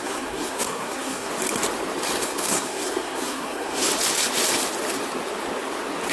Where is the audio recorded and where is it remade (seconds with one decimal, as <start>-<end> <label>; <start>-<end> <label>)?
0.0-1.3 remade; 1.3-2.2 recorded; 2.2-3.9 remade; 3.9-6.1 recorded